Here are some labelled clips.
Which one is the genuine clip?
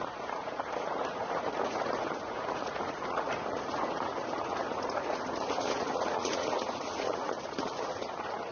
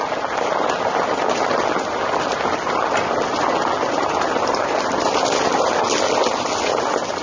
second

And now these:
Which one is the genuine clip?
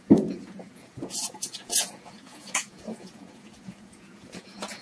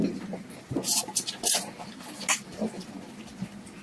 second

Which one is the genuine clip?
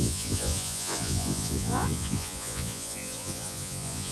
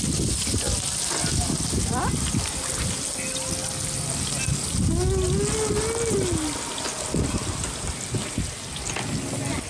second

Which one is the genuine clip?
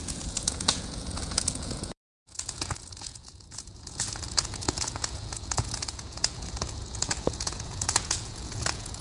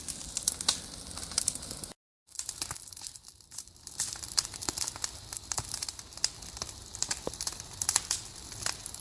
second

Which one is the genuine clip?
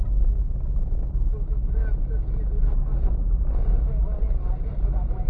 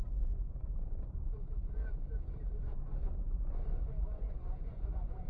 first